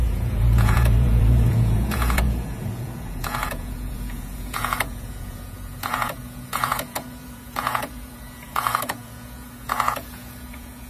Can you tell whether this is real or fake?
fake